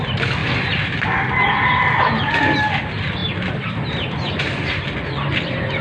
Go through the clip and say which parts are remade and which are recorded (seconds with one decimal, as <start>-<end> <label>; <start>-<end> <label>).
0.0-5.8 recorded